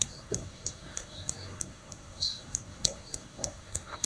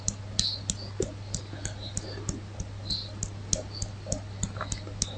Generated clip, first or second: first